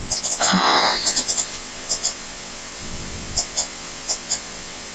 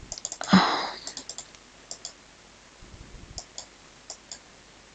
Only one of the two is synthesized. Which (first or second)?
first